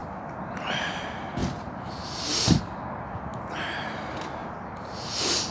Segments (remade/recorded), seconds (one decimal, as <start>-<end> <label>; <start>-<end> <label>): 0.0-1.4 recorded; 1.4-2.3 remade; 2.3-4.4 recorded; 4.4-5.1 remade; 5.1-5.5 recorded